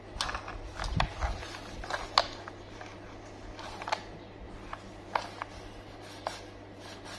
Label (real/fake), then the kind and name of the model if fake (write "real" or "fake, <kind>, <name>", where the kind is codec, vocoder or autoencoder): real